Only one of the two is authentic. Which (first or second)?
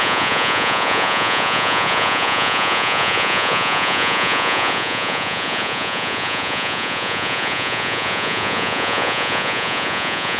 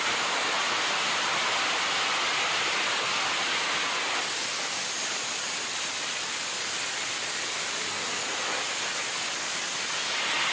second